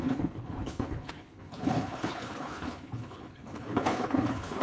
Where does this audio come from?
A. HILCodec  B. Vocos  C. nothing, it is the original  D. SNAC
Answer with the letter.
A